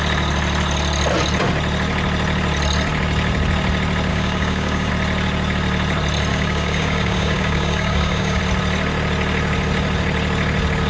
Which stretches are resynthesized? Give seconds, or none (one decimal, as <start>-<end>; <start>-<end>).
4.1-4.9; 6.3-8.4